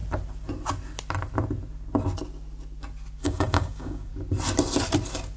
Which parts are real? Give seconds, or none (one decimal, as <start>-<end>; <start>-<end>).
0.0-3.2; 4.1-5.4